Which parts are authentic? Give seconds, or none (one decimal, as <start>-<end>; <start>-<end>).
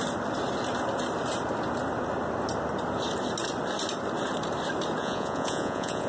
0.0-5.0